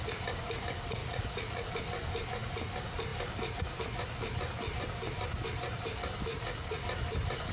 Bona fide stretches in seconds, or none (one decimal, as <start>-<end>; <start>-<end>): 0.0-1.0; 1.7-6.3; 6.8-7.5